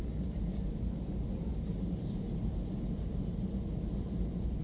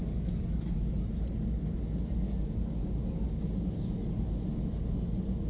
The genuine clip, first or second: second